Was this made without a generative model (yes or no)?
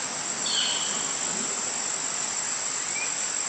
yes